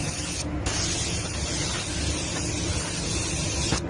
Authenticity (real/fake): real